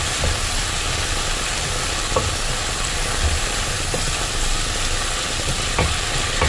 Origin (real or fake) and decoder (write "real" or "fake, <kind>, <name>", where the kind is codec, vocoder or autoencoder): real